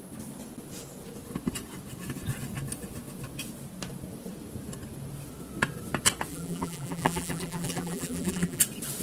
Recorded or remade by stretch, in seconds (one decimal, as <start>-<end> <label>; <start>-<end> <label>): 0.0-6.3 recorded; 6.3-8.6 remade; 8.6-9.0 recorded